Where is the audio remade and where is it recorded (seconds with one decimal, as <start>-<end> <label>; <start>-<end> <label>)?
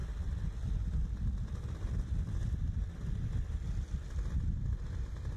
0.0-5.4 recorded